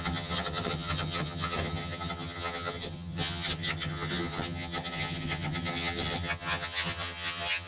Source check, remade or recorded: remade